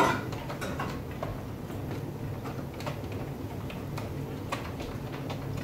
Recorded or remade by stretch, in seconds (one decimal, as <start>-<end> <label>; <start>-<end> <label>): 0.0-5.6 recorded